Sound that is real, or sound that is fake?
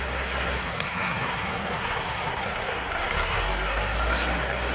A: fake